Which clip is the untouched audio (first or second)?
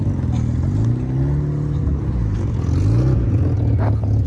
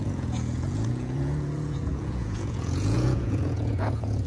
first